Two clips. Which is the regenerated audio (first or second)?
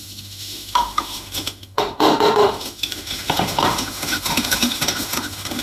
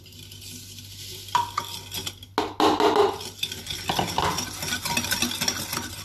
first